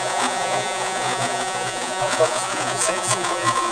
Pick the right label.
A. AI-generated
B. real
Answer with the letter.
A